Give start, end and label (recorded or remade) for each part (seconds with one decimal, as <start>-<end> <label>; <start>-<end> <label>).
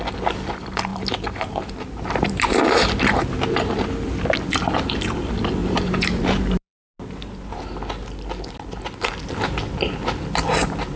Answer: 0.0-0.9 recorded; 0.9-3.2 remade; 3.2-5.6 recorded; 5.6-6.8 remade; 6.8-11.0 recorded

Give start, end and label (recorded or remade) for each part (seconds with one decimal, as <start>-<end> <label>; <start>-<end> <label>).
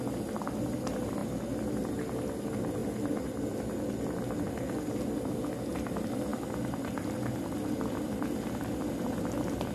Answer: 0.0-9.7 recorded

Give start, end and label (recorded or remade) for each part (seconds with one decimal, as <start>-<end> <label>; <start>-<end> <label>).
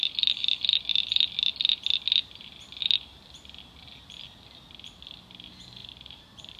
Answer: 0.0-5.8 recorded; 5.8-6.6 remade